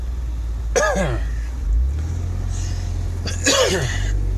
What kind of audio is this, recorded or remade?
recorded